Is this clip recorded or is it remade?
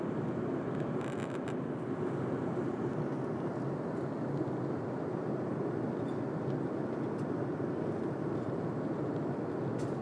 recorded